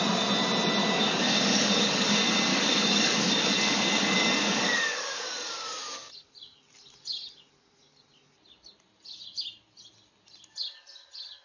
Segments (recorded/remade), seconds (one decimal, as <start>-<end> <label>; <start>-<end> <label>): 0.0-0.8 recorded; 0.8-2.1 remade; 2.1-2.5 recorded; 2.5-5.5 remade; 5.5-11.4 recorded